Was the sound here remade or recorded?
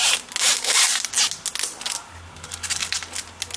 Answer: recorded